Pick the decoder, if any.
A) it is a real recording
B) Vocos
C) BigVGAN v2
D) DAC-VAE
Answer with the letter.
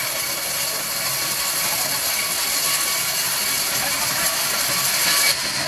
A